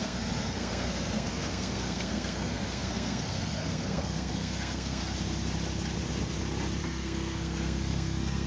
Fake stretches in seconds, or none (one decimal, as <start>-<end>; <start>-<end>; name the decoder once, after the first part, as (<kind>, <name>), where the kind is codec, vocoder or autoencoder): 0.0-5.0 (codec, SNAC); 6.8-8.5